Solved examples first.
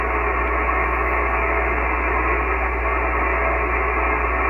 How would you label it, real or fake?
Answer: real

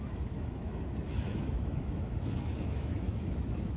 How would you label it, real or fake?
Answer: fake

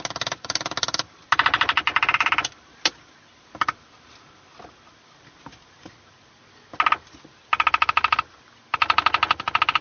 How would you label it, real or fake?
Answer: real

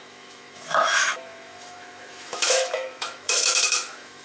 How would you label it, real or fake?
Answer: fake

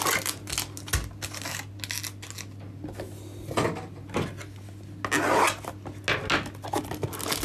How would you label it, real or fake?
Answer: real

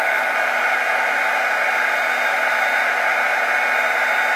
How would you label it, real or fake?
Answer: real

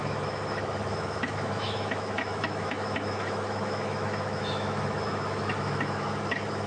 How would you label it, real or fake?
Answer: fake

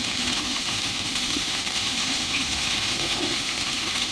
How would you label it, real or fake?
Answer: fake